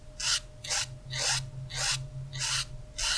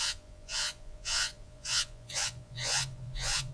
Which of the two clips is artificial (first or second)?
second